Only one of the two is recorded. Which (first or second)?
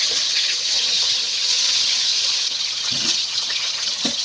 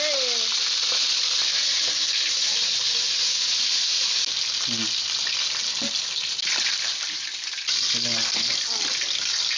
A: second